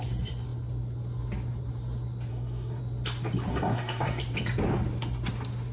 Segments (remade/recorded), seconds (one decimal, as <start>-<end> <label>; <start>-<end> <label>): 0.0-2.3 recorded; 2.3-2.8 remade; 2.8-3.5 recorded; 3.5-4.2 remade; 4.2-5.7 recorded